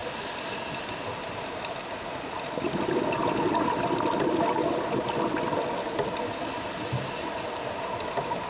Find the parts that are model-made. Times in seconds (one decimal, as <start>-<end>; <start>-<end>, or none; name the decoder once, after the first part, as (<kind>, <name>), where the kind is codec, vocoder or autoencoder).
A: 1.9-2.8 (vocoder, Vocos)